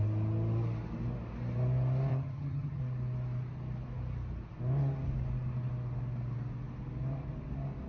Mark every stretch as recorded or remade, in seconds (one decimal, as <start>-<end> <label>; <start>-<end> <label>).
0.0-2.1 recorded; 2.1-2.8 remade; 2.8-7.9 recorded